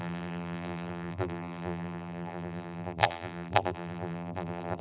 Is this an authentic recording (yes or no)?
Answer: no